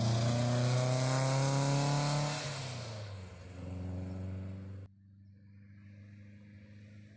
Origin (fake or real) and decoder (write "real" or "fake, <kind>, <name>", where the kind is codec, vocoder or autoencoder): real